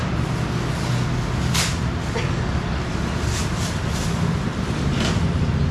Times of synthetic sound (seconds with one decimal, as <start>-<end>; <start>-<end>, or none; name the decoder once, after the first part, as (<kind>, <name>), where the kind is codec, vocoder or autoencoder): none